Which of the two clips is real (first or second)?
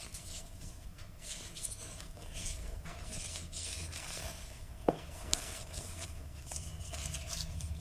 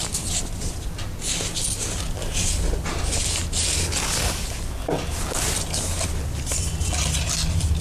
second